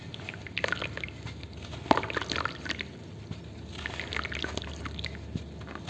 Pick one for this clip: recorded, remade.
recorded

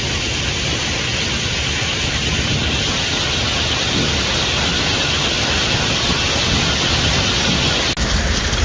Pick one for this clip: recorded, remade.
recorded